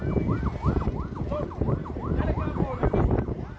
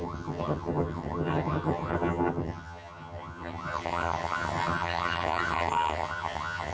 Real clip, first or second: first